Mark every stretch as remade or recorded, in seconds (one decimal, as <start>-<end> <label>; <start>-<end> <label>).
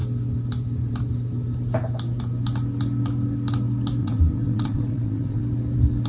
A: 0.0-4.0 recorded; 4.0-5.4 remade; 5.4-6.1 recorded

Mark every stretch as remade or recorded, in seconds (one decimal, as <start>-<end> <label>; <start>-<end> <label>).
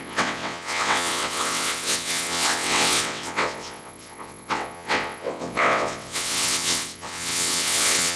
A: 0.0-8.2 remade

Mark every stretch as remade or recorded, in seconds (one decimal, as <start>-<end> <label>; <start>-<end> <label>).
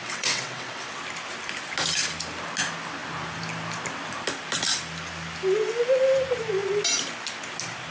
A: 0.0-1.0 remade; 1.0-7.9 recorded